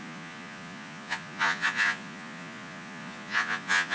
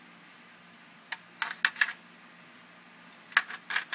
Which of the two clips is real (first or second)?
second